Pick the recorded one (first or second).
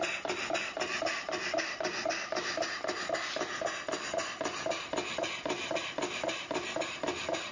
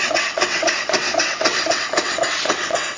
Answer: first